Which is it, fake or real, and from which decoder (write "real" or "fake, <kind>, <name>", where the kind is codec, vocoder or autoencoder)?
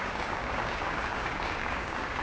fake, codec, DAC